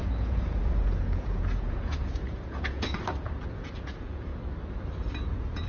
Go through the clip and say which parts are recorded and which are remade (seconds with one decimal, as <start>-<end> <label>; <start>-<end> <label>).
0.0-2.9 remade; 2.9-3.5 recorded; 3.5-4.3 remade; 4.3-5.2 recorded; 5.2-5.7 remade